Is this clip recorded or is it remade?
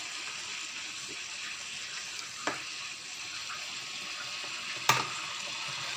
recorded